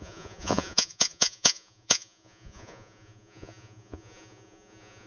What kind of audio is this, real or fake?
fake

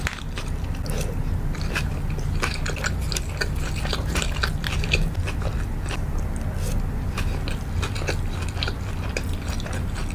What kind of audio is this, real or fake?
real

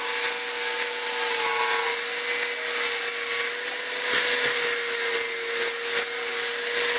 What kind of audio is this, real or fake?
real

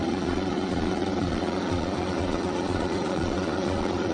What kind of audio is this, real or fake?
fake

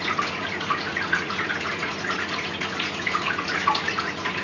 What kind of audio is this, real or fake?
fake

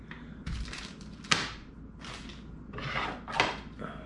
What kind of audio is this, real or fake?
real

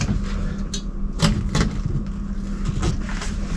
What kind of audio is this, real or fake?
real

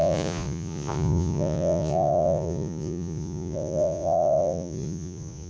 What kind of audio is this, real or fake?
fake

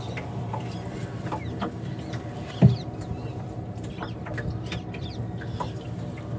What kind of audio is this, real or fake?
real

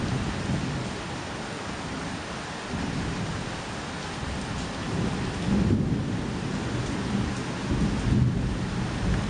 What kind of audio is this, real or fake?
real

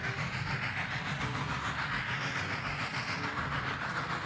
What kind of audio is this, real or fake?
real